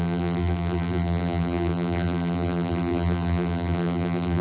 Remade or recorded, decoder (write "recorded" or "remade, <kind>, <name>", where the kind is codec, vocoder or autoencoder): remade, vocoder, BigVGAN v2